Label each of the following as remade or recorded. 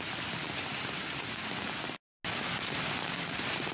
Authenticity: recorded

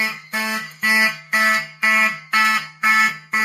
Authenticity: remade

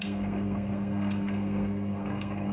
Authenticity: remade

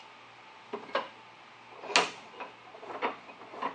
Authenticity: recorded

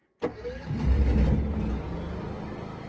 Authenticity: recorded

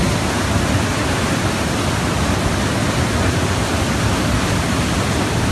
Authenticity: recorded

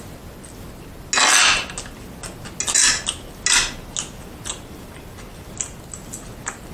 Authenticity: recorded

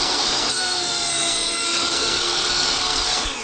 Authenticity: remade